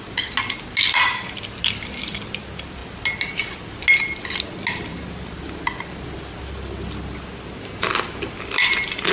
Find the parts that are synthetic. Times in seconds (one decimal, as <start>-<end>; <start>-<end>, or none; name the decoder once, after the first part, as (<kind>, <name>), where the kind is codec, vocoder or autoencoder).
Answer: none